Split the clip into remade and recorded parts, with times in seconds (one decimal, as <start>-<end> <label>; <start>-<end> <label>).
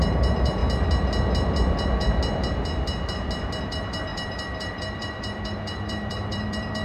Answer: 0.0-0.6 remade; 0.6-3.6 recorded; 3.6-6.8 remade